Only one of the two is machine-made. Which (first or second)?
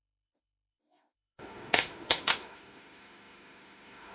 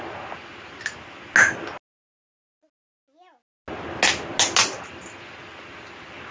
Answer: first